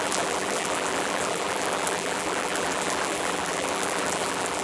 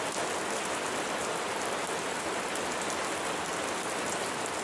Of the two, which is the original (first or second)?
second